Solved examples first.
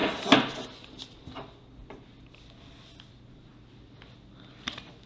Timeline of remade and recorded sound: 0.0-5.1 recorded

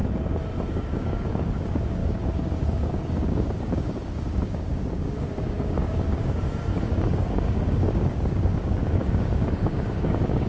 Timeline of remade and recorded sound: 0.0-0.7 recorded; 0.7-10.5 remade

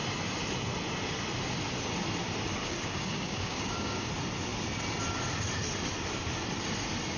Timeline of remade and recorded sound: 0.0-2.6 recorded; 2.6-4.1 remade; 4.1-7.2 recorded

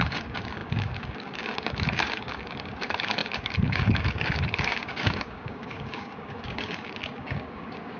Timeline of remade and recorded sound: 0.0-8.0 remade

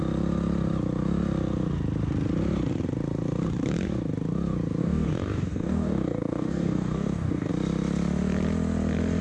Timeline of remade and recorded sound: 0.0-4.8 recorded; 4.8-7.5 remade; 7.5-9.2 recorded

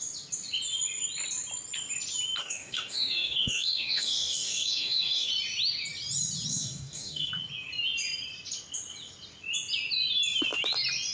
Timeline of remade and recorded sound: 0.0-2.4 recorded; 2.4-5.3 remade; 5.3-6.5 recorded; 6.5-7.3 remade; 7.3-11.1 recorded

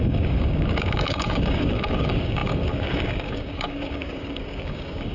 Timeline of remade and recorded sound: 0.0-5.1 remade